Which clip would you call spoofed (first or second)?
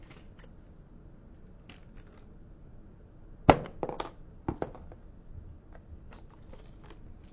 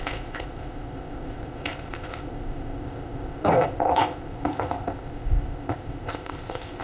second